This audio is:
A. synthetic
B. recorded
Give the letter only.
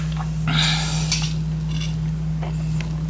B